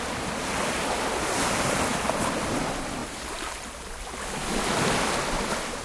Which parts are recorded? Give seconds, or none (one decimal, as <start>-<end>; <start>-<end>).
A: 0.0-3.0; 3.9-5.8